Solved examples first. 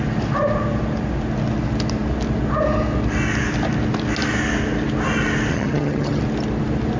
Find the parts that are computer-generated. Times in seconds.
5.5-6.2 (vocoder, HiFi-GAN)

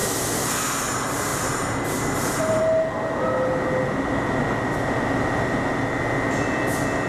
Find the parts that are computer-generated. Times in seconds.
1.3-2.6 (vocoder, BigVGAN v2)